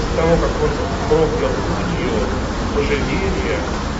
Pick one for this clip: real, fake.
real